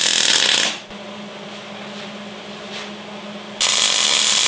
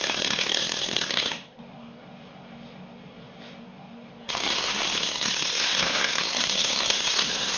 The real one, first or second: first